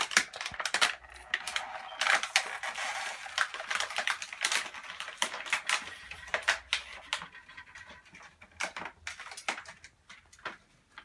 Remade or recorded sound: recorded